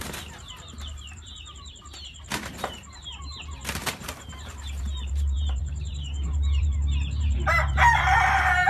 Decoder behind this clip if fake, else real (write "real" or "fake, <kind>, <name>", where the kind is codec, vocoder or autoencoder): fake, vocoder, BigVGAN v2